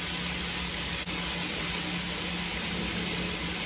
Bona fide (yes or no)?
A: yes